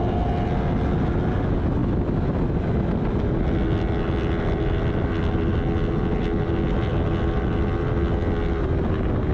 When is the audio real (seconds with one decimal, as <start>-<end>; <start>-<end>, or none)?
0.0-9.3